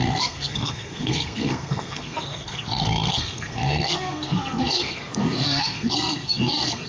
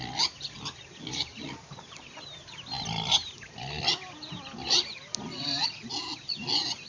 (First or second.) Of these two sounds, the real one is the second